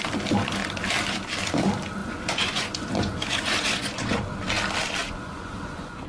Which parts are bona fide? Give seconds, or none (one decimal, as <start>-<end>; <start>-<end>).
0.0-2.0; 4.2-5.0